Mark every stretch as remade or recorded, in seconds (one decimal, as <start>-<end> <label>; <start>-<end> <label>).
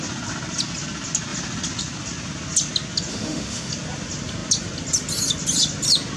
0.0-3.1 recorded; 3.1-3.7 remade; 3.7-6.2 recorded